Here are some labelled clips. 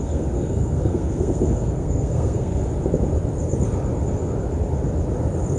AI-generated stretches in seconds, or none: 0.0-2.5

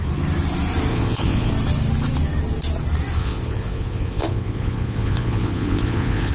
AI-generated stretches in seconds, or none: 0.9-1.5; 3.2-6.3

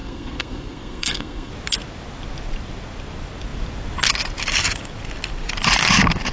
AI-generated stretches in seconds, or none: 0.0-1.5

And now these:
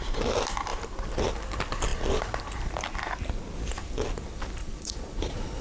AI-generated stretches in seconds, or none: 4.6-5.6

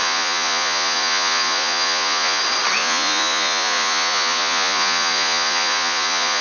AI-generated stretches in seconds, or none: 0.0-2.4; 2.8-6.4

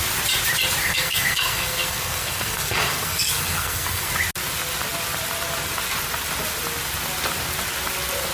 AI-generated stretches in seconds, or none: 0.8-4.1